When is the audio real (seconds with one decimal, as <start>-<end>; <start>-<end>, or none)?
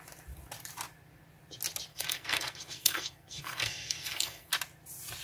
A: 0.0-1.9; 4.5-5.2